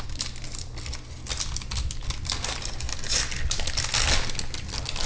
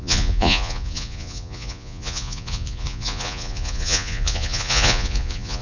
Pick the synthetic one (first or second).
second